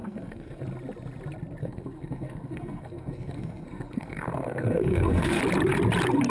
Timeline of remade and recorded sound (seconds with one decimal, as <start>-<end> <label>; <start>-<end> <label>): 0.0-0.6 remade; 0.6-1.6 recorded; 1.6-5.4 remade; 5.4-6.3 recorded